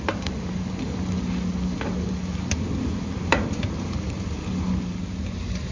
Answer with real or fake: real